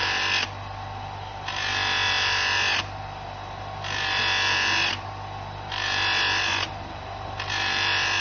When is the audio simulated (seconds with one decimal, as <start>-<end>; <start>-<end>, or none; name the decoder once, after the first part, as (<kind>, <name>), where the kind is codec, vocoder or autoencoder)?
none